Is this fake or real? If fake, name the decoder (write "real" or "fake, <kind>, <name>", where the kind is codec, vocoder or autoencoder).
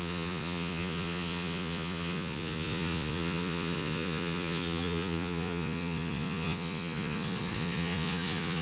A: fake, vocoder, Vocos